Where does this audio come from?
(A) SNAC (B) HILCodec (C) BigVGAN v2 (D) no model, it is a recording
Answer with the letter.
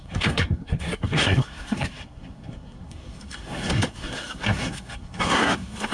A